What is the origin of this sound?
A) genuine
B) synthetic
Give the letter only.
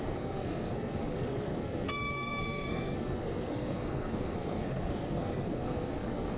B